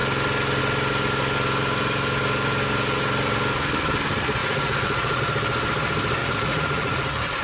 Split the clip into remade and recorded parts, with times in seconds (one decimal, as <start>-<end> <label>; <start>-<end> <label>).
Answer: 0.0-4.4 recorded; 4.4-5.2 remade; 5.2-6.2 recorded; 6.2-7.4 remade